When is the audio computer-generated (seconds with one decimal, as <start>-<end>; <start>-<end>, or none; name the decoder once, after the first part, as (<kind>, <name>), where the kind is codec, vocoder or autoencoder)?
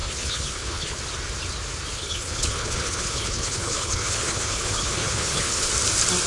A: 0.0-1.0 (codec, HILCodec); 1.9-5.7